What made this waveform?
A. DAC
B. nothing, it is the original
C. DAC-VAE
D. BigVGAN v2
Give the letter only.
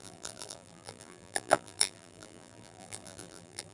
D